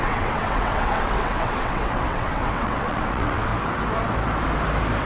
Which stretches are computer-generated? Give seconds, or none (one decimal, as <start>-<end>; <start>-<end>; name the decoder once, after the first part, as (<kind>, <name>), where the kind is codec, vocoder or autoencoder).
0.0-3.5 (vocoder, WaveNeXt)